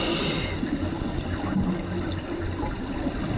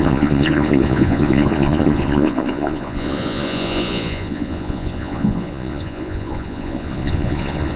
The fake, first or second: second